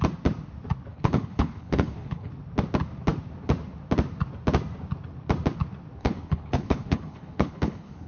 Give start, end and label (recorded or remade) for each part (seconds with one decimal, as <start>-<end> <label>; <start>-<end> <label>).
0.0-0.9 recorded; 0.9-2.3 remade; 2.3-6.0 recorded; 6.0-8.1 remade